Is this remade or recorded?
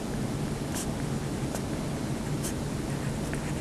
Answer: recorded